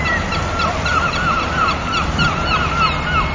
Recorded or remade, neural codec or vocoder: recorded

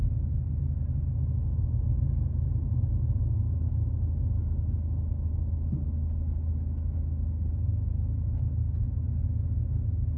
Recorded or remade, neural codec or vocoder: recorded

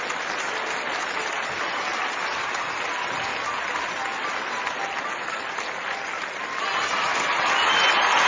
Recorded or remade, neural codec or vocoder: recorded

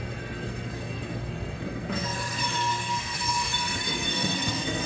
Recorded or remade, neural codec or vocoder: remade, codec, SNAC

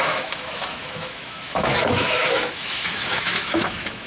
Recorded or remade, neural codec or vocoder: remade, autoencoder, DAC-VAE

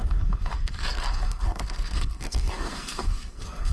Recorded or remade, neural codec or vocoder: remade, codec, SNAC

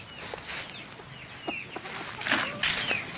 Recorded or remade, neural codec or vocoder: recorded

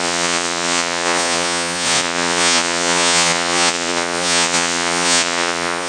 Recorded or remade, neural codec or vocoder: remade, vocoder, Vocos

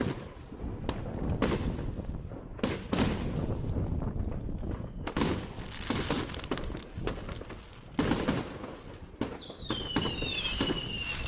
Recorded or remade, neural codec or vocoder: recorded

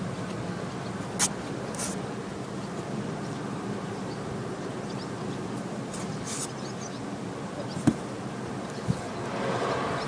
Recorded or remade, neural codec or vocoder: recorded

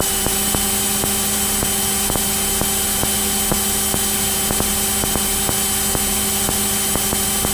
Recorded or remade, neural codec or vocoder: recorded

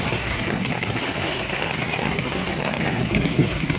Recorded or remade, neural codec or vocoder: remade, codec, SNAC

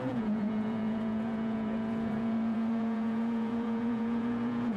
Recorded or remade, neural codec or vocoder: remade, vocoder, Vocos